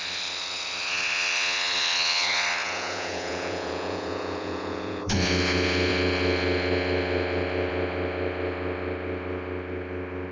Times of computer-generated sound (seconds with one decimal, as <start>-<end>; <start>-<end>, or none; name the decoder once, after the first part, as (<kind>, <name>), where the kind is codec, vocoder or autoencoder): 2.6-5.0 (vocoder, Vocos)